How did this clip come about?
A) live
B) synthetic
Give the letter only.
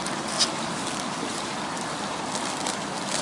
A